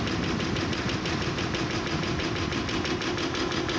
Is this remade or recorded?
recorded